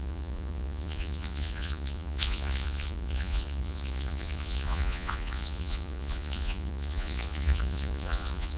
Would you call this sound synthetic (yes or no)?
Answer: yes